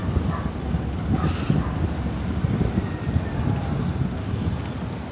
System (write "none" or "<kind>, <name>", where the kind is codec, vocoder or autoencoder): none